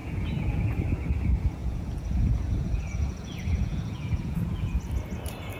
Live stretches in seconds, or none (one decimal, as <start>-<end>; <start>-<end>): 0.6-1.6; 4.8-5.6